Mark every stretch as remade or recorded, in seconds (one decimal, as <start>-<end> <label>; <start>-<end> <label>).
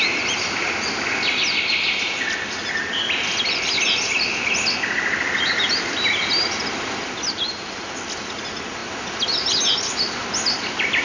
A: 0.0-11.0 recorded